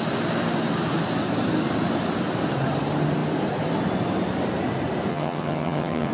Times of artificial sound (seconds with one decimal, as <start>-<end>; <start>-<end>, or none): 5.1-6.1